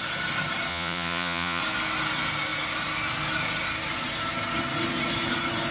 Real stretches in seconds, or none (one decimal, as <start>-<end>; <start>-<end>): 0.0-0.7; 1.6-5.7